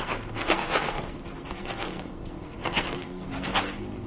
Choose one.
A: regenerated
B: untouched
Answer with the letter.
A